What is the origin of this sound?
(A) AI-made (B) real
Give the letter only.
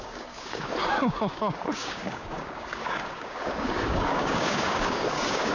A